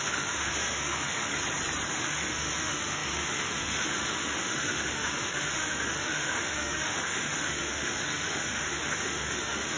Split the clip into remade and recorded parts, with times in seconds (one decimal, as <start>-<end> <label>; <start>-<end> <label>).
0.0-1.3 remade; 1.3-1.9 recorded; 1.9-9.8 remade